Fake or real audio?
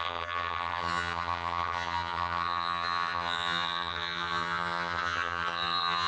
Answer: fake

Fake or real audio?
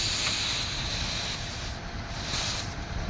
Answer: real